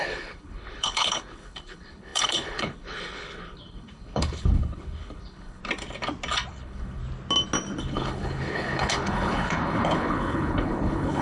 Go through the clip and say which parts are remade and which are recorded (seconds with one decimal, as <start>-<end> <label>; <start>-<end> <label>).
0.0-5.6 remade; 5.6-6.5 recorded; 6.5-7.0 remade; 7.0-7.8 recorded; 7.8-11.2 remade